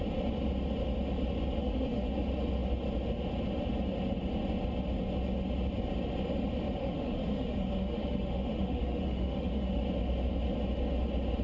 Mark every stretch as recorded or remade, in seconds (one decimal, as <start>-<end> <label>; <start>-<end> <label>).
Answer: 0.0-1.6 recorded; 1.6-2.1 remade; 2.1-6.8 recorded; 6.8-9.8 remade; 9.8-11.4 recorded